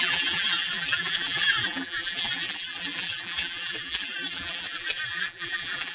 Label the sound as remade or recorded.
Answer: remade